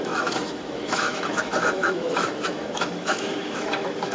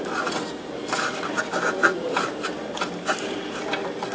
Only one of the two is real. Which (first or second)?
second